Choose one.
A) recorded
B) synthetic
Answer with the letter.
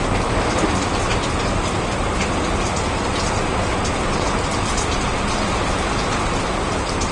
A